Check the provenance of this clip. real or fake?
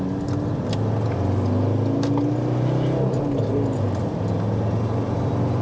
real